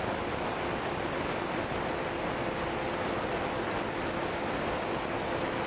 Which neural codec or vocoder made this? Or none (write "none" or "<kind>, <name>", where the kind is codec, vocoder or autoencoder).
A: none